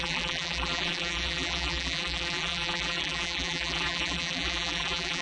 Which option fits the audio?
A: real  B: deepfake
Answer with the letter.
B